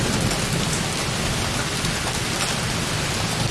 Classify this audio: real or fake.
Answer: real